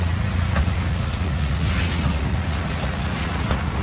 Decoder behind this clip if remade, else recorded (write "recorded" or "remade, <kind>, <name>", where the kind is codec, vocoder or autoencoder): remade, vocoder, Vocos